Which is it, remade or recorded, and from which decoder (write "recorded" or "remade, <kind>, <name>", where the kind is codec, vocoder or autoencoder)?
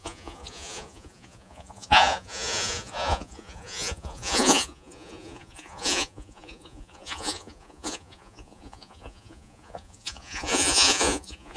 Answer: remade, vocoder, Vocos